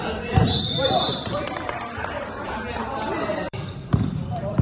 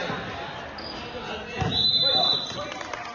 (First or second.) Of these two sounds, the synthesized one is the first